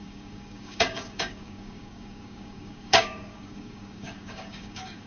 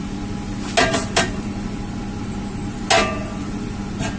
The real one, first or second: second